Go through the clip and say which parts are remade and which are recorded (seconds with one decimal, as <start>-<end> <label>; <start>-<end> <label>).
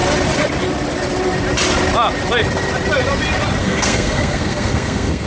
0.0-3.6 recorded; 3.6-5.3 remade